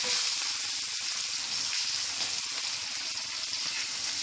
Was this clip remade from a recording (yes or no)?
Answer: no